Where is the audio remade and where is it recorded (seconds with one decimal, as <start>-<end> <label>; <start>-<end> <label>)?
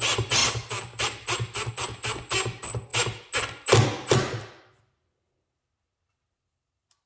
0.0-7.1 recorded